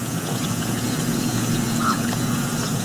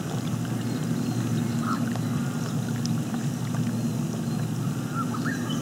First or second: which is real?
second